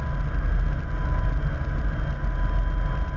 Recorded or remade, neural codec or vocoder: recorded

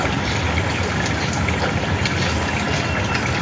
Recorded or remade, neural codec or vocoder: recorded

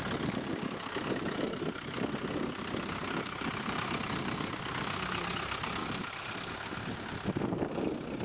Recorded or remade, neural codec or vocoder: recorded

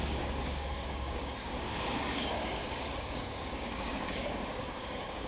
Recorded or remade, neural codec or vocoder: remade, codec, DAC